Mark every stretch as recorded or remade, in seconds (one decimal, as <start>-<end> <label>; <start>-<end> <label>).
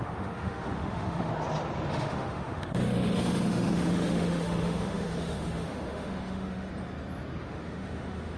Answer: 0.0-1.3 remade; 1.3-1.9 recorded; 1.9-6.7 remade; 6.7-7.4 recorded; 7.4-8.4 remade